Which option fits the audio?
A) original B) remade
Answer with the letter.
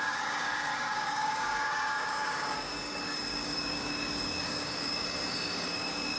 B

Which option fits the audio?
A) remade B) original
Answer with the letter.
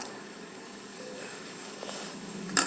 A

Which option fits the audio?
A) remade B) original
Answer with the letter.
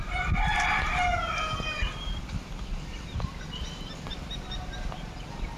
B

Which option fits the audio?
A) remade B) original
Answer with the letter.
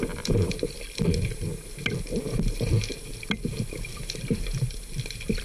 B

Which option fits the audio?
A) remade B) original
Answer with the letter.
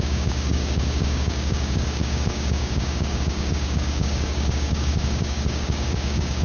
A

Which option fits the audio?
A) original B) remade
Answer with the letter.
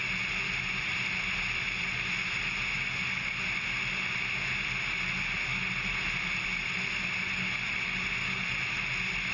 A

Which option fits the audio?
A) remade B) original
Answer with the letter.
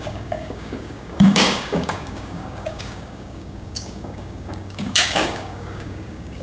A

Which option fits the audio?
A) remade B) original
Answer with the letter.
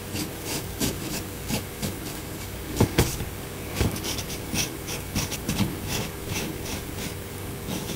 A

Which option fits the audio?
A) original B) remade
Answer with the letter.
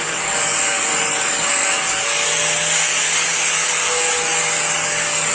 B